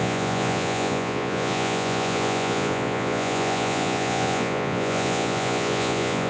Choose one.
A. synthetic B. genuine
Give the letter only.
A